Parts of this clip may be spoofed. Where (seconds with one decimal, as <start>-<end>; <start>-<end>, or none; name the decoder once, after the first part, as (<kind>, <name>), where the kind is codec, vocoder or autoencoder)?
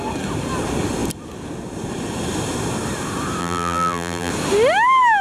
3.4-4.3 (vocoder, BigVGAN v2)